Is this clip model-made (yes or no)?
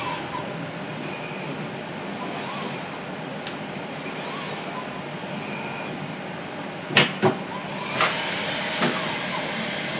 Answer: no